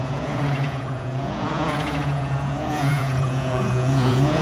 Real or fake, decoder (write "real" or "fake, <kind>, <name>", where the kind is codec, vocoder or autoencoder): fake, vocoder, Vocos